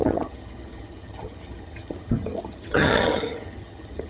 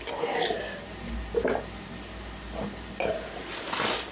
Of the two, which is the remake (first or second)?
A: first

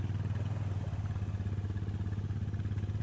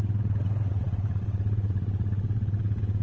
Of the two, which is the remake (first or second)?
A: second